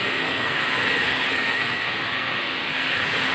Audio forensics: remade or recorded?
remade